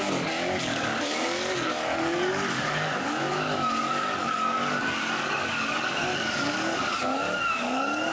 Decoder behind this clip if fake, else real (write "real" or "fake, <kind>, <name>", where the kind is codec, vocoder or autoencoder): fake, codec, DAC